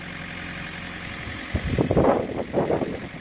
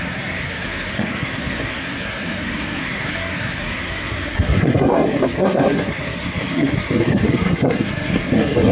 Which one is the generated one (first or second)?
second